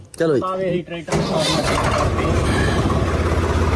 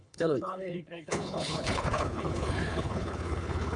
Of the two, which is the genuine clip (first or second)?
first